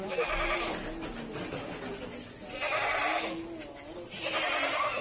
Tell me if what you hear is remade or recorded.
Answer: recorded